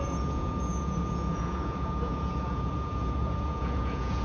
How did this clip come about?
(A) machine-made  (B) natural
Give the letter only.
A